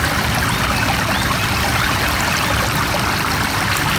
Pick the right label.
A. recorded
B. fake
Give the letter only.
A